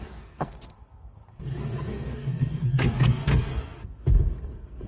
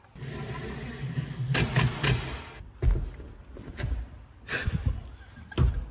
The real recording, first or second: second